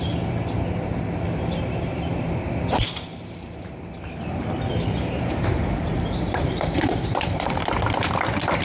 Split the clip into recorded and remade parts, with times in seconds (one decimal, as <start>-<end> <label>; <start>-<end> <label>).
0.0-3.1 recorded; 3.1-7.7 remade; 7.7-8.6 recorded